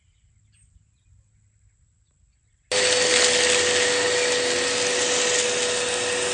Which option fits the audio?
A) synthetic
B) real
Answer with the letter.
B